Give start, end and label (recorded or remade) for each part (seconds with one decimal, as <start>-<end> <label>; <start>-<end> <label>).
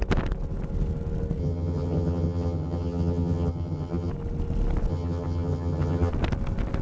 0.0-1.4 recorded; 1.4-4.1 remade; 4.1-4.9 recorded; 4.9-6.1 remade; 6.1-6.8 recorded